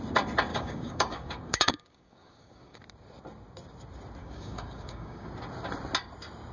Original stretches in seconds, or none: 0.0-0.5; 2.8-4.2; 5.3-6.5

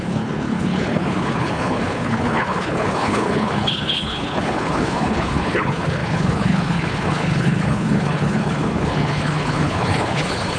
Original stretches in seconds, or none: none

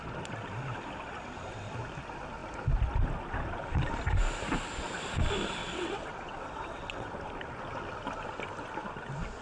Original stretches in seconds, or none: 0.0-5.6; 7.1-9.4

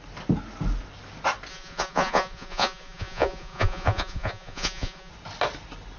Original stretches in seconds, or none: 0.0-1.5; 5.1-6.0

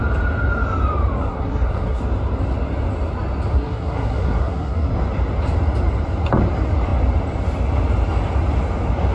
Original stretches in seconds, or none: 0.0-1.2; 2.0-3.5; 4.9-9.1